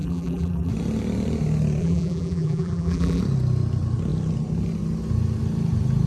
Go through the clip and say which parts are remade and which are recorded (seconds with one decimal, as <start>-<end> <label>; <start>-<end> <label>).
0.0-0.7 remade; 0.7-1.8 recorded; 1.8-3.2 remade; 3.2-6.1 recorded